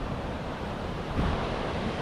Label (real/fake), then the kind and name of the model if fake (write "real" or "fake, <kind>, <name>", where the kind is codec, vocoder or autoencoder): fake, vocoder, BigVGAN v2